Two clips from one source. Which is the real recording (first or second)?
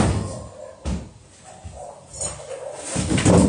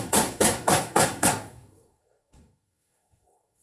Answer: first